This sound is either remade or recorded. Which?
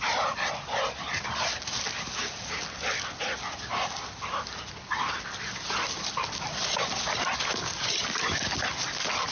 recorded